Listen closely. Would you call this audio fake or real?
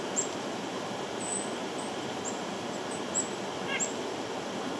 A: real